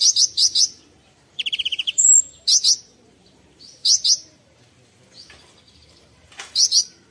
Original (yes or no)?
no